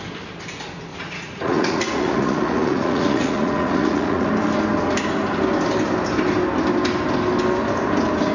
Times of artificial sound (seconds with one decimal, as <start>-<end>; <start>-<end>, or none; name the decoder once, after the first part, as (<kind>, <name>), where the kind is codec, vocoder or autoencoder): 0.9-4.3 (vocoder, Vocos)